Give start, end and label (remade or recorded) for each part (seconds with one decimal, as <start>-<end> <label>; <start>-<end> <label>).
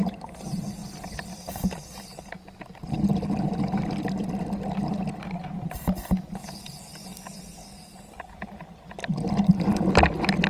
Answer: 0.0-10.5 recorded